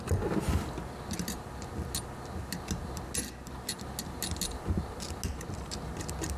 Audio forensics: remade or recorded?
recorded